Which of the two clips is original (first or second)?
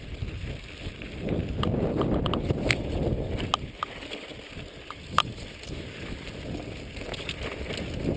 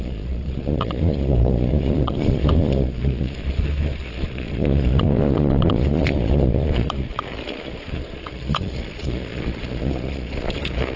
first